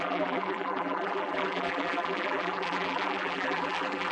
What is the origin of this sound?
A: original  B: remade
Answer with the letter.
B